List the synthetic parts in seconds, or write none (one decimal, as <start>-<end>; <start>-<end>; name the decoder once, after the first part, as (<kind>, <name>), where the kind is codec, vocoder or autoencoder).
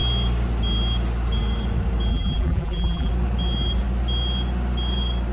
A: 2.1-3.1 (vocoder, BigVGAN v2)